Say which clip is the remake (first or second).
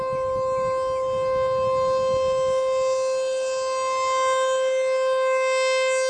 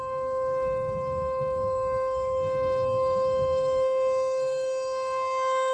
second